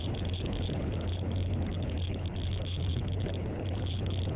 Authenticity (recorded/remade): remade